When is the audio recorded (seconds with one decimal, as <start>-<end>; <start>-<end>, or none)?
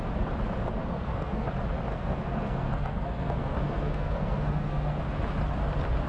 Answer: 0.0-0.8; 1.5-1.9; 5.0-6.1